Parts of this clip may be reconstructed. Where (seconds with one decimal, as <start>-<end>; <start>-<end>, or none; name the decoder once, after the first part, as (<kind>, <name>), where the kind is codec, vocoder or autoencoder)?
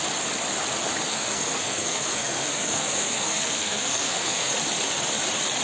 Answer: 1.1-4.5 (codec, SNAC)